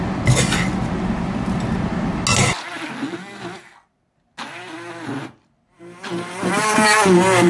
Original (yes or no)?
yes